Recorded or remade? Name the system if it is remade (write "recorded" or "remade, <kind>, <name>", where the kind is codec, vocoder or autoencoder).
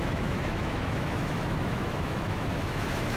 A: remade, autoencoder, DAC-VAE